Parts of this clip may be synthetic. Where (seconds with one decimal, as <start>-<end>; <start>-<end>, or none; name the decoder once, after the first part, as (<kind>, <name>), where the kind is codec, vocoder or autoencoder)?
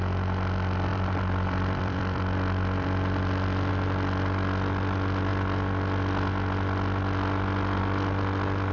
0.9-3.7 (vocoder, BigVGAN v2)